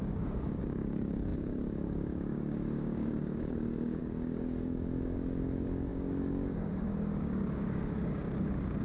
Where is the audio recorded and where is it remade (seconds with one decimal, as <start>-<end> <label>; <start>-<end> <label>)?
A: 0.0-8.8 remade